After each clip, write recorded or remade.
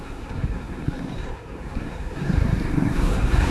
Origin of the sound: remade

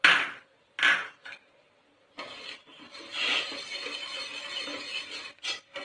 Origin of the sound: recorded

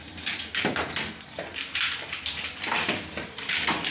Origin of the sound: recorded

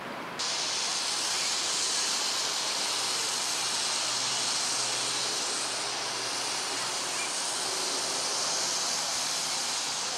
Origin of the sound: recorded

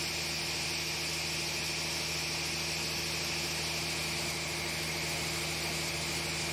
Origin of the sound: recorded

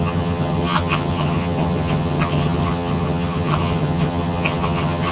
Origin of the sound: remade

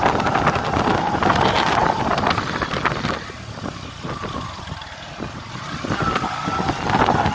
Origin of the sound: recorded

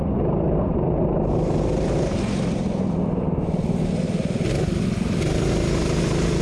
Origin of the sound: recorded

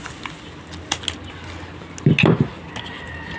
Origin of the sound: recorded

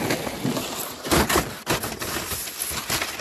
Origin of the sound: recorded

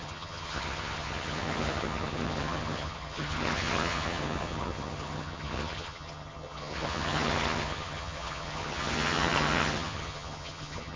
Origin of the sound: remade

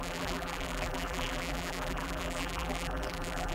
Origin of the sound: remade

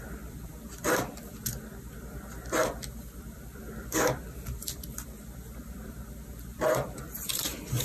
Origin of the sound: remade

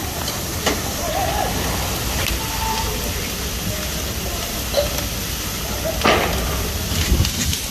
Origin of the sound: recorded